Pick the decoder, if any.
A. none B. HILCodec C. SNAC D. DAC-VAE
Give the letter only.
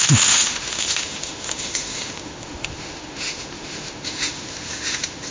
D